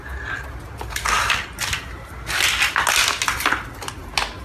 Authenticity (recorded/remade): recorded